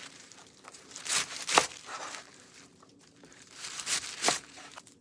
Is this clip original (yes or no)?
no